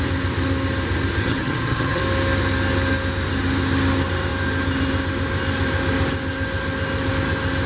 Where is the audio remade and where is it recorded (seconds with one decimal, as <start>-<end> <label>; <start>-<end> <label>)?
0.0-1.2 recorded; 1.2-2.0 remade; 2.0-7.7 recorded